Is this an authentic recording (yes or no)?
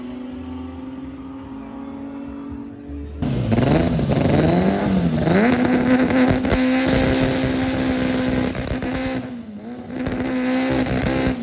yes